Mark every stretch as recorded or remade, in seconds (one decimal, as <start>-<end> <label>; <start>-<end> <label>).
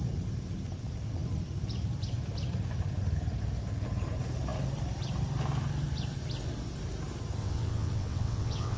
0.0-7.4 recorded; 7.4-8.8 remade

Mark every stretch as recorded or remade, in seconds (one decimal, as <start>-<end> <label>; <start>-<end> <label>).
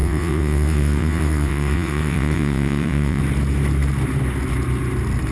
0.0-3.2 remade; 3.2-5.3 recorded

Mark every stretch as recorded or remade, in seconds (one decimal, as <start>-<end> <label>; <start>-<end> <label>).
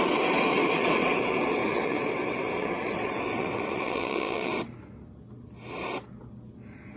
0.0-4.5 remade; 4.5-7.0 recorded